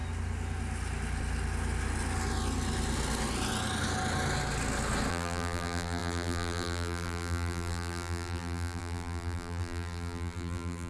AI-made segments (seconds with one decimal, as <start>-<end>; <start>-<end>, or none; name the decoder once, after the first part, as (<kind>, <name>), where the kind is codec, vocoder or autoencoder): 5.1-10.9 (vocoder, BigVGAN v2)